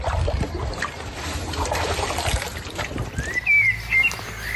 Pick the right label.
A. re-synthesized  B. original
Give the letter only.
B